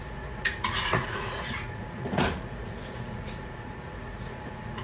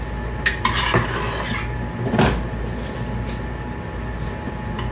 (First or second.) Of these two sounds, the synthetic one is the first